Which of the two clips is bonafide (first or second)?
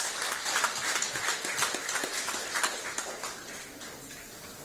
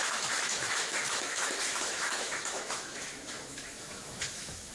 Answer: first